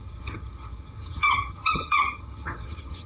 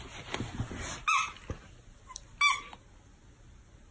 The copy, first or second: first